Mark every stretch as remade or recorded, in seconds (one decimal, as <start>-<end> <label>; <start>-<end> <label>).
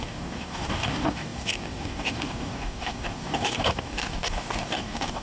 0.0-5.2 remade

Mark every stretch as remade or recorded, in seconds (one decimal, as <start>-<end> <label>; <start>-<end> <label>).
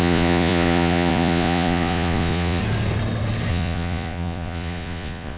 0.0-2.6 remade; 2.6-3.5 recorded; 3.5-5.4 remade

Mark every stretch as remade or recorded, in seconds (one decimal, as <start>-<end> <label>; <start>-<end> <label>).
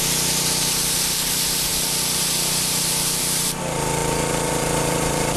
0.0-5.4 remade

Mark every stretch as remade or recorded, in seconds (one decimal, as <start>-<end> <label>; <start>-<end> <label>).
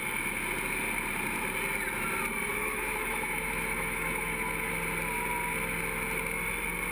0.0-2.5 recorded; 2.5-4.7 remade; 4.7-6.9 recorded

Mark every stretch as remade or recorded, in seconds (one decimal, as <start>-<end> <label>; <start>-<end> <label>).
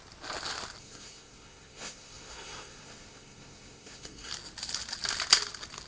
0.0-0.8 recorded; 0.8-4.3 remade; 4.3-5.9 recorded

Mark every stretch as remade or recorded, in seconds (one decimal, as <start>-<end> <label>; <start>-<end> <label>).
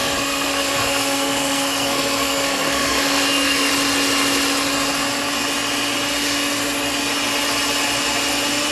0.0-3.7 remade; 3.7-8.7 recorded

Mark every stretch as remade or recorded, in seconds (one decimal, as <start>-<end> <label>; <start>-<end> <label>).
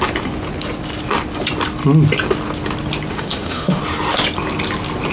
0.0-3.1 recorded; 3.1-3.8 remade; 3.8-5.1 recorded